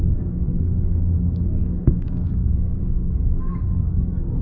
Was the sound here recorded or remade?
remade